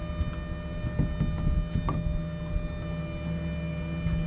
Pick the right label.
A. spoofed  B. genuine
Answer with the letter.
B